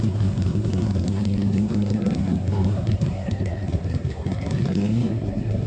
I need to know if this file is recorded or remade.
remade